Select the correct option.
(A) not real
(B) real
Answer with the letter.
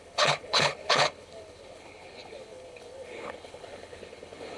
A